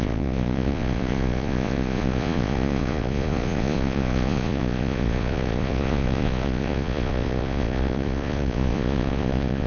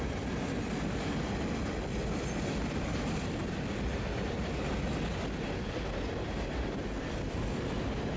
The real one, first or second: second